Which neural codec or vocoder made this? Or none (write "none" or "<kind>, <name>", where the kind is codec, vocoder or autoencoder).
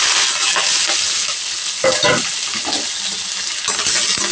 none